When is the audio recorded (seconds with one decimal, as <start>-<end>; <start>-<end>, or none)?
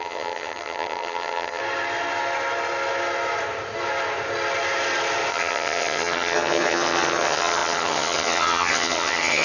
1.6-5.3